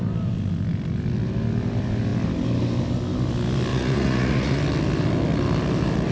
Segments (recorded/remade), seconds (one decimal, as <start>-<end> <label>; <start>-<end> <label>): 0.0-3.7 recorded; 3.7-4.6 remade; 4.6-6.1 recorded